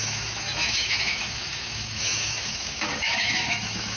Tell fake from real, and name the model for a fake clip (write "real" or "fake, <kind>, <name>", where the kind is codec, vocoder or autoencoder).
fake, autoencoder, DAC-VAE